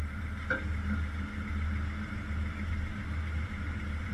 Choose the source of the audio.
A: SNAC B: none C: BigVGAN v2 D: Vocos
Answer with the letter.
B